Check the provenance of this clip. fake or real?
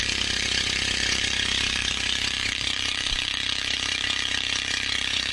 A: fake